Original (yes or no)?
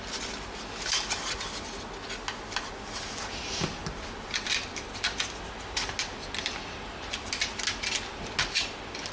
yes